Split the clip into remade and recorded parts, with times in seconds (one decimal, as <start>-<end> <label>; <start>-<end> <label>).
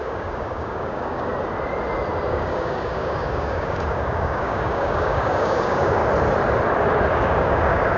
0.0-1.3 remade; 1.3-2.3 recorded; 2.3-6.0 remade; 6.0-7.1 recorded; 7.1-8.0 remade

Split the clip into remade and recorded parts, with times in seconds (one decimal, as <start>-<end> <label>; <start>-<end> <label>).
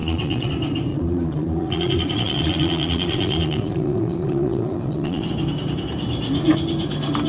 0.0-0.5 remade; 0.5-0.9 recorded; 0.9-5.3 remade; 5.3-7.3 recorded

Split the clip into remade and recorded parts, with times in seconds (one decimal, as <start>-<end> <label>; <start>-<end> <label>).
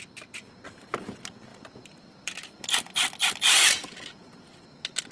0.0-1.5 recorded; 1.5-4.6 remade; 4.6-5.1 recorded